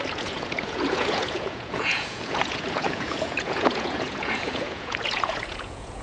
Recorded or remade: remade